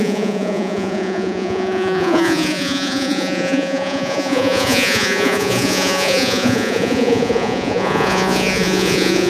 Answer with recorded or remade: remade